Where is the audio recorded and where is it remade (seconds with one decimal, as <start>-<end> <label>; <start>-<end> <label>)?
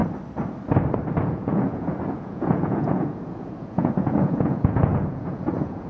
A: 0.0-1.2 recorded; 1.2-5.9 remade